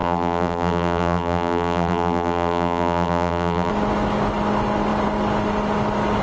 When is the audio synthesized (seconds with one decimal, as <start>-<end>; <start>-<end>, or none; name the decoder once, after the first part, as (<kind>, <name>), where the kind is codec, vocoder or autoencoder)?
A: 0.0-3.7 (vocoder, BigVGAN v2)